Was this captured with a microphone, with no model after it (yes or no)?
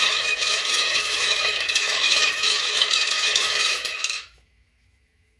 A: no